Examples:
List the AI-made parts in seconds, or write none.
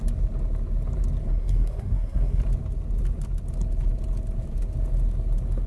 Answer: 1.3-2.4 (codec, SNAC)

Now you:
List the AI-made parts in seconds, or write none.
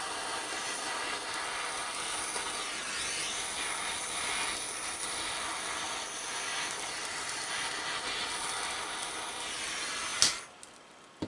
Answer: none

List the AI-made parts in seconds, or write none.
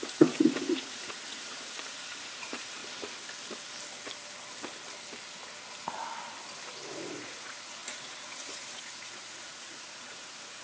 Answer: 0.0-2.8 (vocoder, Vocos); 6.9-10.6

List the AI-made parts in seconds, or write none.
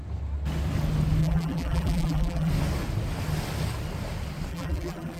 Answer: 1.2-2.5 (vocoder, BigVGAN v2); 4.5-5.2